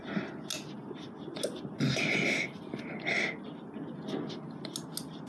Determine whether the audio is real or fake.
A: real